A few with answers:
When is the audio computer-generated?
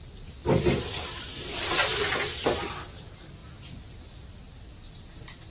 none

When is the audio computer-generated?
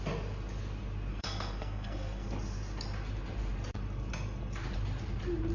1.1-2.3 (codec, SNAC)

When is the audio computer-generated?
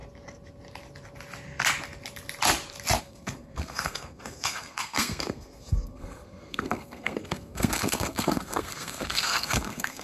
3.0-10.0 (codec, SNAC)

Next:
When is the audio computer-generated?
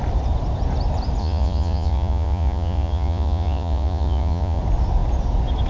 1.2-4.6 (vocoder, Vocos)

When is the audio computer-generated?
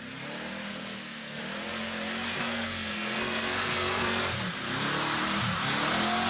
0.7-1.4 (codec, SNAC); 2.3-4.2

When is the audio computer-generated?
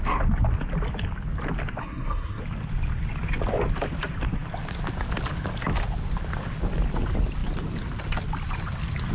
1.8-2.4 (codec, SNAC)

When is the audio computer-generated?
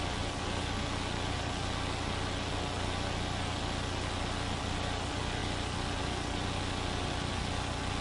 none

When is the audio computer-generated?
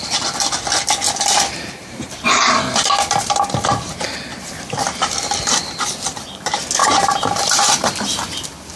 1.8-2.6 (vocoder, BigVGAN v2); 4.3-5.1; 6.8-7.5